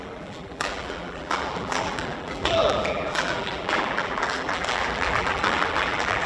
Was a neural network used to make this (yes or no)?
yes